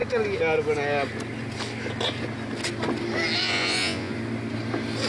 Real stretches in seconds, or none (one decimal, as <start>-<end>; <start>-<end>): 0.0-3.4; 4.1-5.1